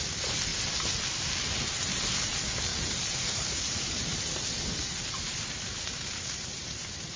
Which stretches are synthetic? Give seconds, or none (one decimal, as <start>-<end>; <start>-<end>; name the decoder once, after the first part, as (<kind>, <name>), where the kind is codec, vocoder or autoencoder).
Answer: 2.7-7.2 (vocoder, BigVGAN v2)